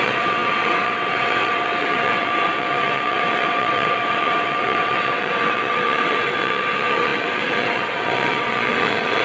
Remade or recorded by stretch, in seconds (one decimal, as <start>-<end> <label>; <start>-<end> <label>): 0.0-9.2 remade